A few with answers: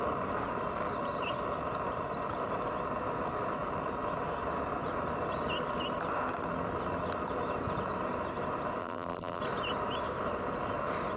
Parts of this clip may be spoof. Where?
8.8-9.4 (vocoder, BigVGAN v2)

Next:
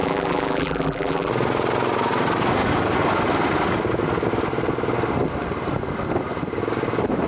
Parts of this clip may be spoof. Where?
0.0-1.3 (vocoder, BigVGAN v2)

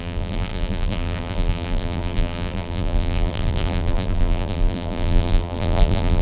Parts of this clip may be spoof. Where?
0.0-6.2 (vocoder, BigVGAN v2)

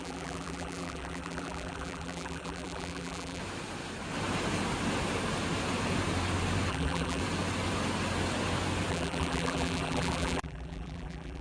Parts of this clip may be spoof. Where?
0.0-3.4 (vocoder, BigVGAN v2); 6.7-7.2; 8.9-11.4

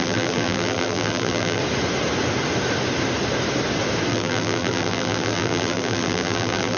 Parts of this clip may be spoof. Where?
0.0-1.6 (vocoder, BigVGAN v2); 4.1-6.8

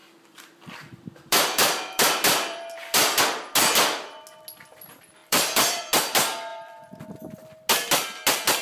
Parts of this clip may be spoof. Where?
0.0-3.2 (vocoder, BigVGAN v2); 5.2-5.8; 6.5-7.0